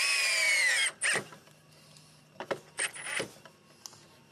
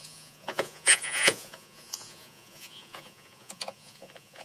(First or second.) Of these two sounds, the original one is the first